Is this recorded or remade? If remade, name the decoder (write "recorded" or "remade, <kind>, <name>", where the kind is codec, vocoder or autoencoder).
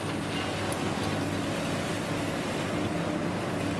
recorded